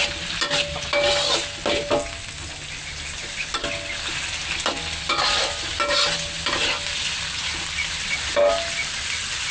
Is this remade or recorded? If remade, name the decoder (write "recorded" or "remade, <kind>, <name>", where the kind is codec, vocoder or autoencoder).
recorded